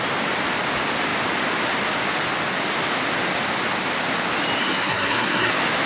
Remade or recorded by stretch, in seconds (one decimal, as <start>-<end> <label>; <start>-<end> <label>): 0.0-4.6 recorded; 4.6-5.5 remade; 5.5-5.9 recorded